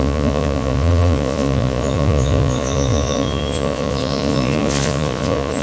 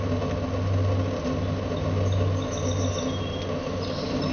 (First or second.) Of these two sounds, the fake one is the first